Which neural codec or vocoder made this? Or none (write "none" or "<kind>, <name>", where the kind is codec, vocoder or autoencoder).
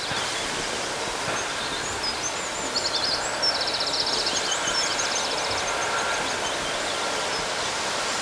none